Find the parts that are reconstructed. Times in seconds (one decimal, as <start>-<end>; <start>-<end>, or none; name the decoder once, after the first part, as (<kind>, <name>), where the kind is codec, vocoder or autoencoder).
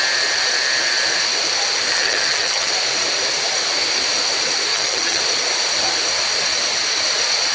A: 1.9-2.7 (vocoder, HiFi-GAN); 4.7-5.2